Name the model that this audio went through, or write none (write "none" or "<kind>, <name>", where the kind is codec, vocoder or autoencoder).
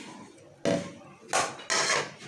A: none